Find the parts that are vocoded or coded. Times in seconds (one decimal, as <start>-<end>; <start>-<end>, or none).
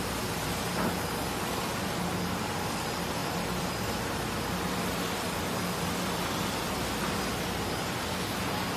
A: 3.2-7.2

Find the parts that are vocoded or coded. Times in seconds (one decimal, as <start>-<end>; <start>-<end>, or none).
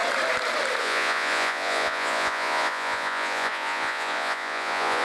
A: 0.8-5.0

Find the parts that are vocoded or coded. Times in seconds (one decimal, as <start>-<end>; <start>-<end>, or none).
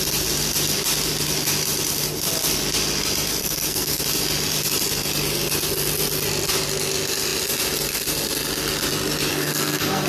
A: 3.4-4.0; 9.3-10.1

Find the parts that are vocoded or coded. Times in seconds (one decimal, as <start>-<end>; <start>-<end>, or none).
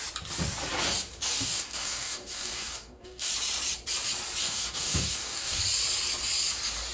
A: 1.3-3.3; 4.4-5.6